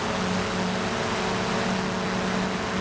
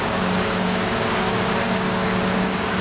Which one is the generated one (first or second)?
second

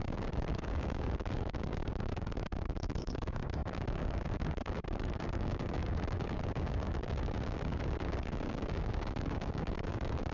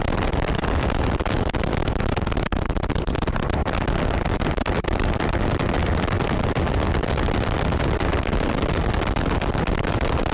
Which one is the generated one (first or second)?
first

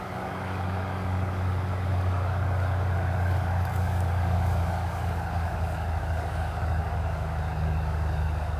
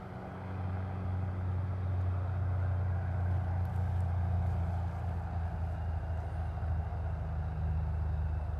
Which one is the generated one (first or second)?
first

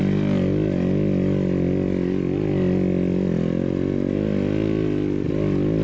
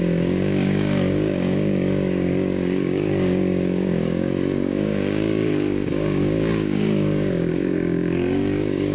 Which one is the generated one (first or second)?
second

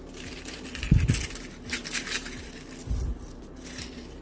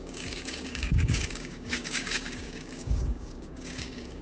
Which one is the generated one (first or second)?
second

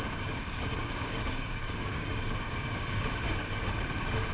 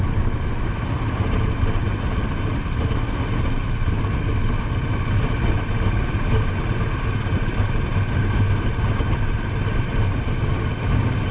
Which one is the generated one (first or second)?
first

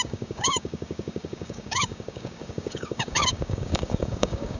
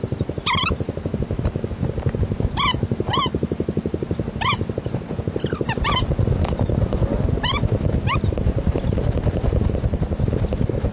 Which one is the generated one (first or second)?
first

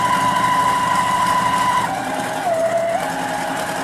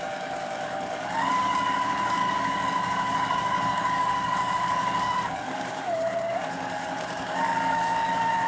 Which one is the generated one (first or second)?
second